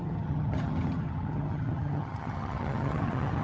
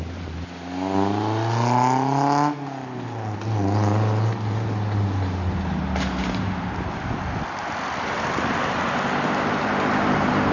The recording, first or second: second